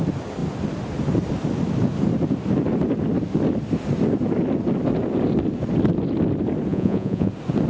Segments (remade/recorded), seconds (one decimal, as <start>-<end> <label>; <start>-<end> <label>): 0.0-6.7 recorded; 6.7-7.3 remade; 7.3-7.7 recorded